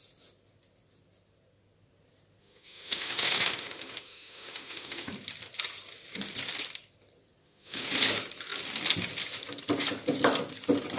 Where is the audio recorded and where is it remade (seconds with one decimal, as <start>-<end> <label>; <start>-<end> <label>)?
0.0-2.4 recorded; 2.4-5.1 remade; 5.1-7.4 recorded; 7.4-7.9 remade; 7.9-11.0 recorded